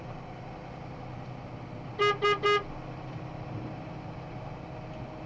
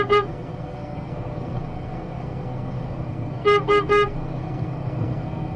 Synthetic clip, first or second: second